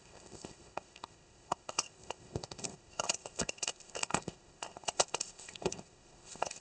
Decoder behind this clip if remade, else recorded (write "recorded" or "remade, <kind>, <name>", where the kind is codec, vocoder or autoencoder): remade, codec, ZipCodec